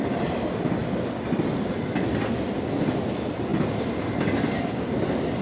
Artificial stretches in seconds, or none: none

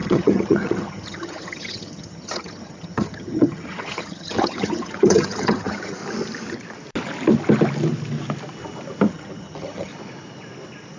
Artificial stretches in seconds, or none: 0.0-6.0 (vocoder, HiFi-GAN); 9.1-9.9

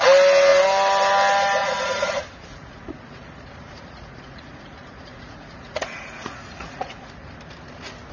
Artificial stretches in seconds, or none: 1.6-2.1 (vocoder, Vocos); 2.5-7.0

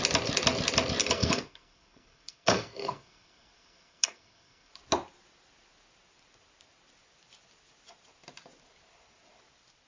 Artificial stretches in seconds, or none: 1.0-4.7 (codec, SNAC)